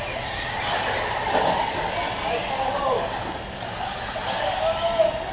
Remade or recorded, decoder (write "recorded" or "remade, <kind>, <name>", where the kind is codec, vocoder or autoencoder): recorded